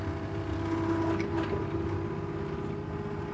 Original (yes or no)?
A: yes